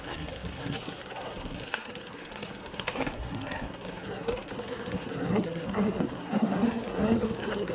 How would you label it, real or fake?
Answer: fake